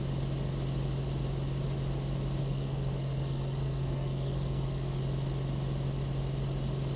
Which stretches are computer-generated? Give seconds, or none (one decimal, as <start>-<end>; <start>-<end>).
2.4-5.0